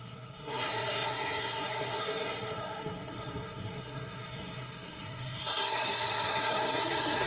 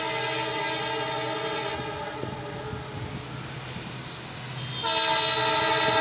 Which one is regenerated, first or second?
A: first